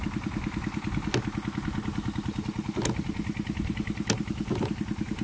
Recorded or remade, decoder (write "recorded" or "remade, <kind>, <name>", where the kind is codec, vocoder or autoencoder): recorded